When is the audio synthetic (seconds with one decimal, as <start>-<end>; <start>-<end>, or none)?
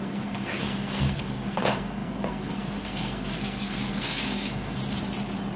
0.0-4.8